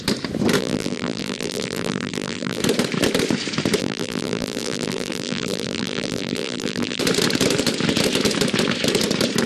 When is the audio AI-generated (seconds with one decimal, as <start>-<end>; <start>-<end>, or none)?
0.6-2.6; 3.8-7.0